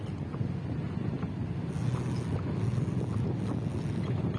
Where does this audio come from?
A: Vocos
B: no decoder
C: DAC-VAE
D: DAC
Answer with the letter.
B